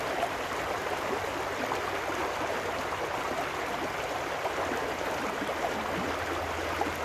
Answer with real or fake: real